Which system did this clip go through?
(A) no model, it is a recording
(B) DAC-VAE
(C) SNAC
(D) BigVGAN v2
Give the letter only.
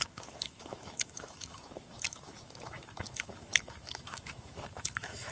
B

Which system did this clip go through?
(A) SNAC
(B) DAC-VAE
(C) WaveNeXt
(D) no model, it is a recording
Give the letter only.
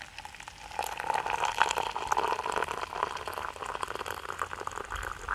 D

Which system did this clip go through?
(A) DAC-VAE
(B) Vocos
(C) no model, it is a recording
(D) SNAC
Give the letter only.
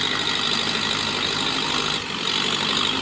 C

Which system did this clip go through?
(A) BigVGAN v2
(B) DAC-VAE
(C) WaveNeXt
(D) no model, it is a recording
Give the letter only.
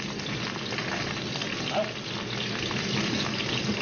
D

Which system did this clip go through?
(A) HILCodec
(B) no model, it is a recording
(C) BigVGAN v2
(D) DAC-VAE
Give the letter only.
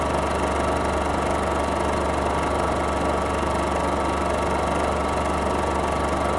B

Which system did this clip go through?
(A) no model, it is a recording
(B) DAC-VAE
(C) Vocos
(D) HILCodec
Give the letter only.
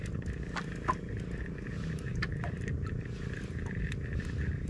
A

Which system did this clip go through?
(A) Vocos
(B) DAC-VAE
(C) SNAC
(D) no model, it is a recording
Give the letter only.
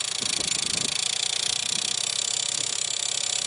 D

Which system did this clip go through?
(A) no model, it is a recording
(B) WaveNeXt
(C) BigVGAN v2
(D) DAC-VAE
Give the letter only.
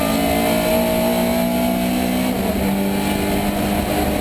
A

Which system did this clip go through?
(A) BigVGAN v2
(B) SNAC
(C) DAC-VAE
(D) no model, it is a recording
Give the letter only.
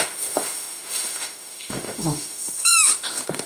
C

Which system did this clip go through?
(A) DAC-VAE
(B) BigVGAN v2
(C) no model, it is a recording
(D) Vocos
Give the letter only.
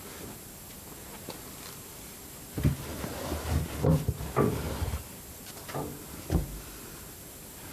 C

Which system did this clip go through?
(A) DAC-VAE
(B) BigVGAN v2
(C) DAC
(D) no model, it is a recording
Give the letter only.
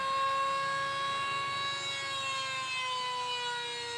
D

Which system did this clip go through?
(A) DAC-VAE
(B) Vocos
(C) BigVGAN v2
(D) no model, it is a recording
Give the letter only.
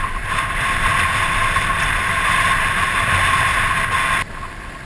D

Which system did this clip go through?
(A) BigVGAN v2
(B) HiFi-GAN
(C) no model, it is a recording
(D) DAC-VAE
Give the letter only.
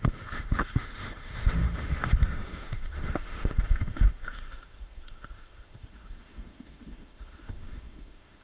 D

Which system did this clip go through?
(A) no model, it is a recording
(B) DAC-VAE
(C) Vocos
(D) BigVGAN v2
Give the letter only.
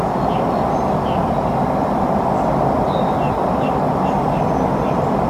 A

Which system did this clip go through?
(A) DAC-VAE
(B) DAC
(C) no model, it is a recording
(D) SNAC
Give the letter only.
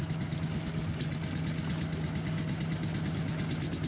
C